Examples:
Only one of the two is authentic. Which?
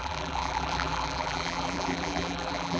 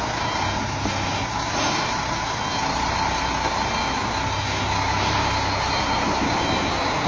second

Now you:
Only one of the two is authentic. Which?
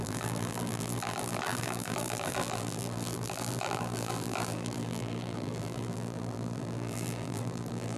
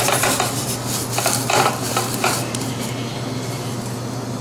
second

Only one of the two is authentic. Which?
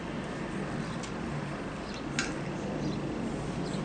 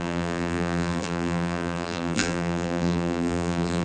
first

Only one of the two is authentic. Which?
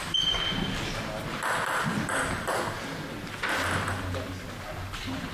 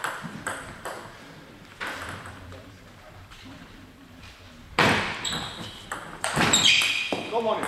first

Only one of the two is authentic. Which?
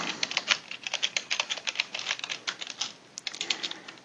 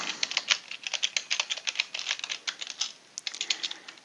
second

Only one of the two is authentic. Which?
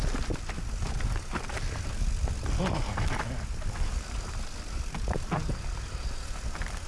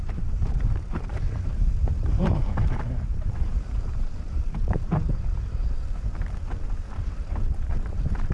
first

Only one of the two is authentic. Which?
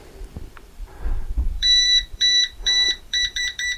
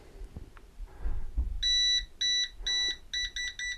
second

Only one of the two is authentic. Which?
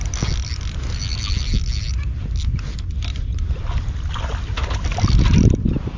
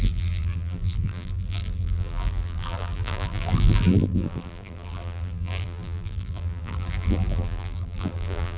first